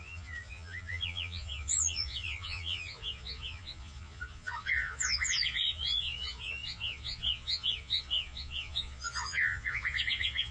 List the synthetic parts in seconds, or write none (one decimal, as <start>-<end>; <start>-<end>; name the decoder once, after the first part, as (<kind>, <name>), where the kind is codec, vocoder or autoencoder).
0.0-10.5 (vocoder, Vocos)